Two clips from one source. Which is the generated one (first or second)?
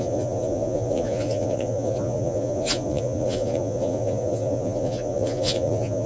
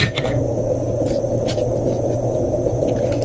first